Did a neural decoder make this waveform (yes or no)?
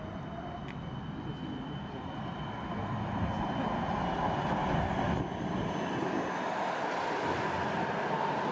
no